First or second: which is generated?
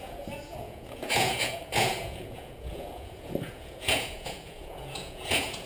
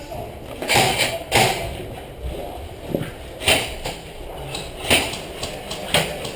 first